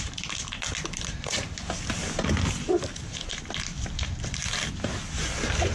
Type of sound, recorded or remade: recorded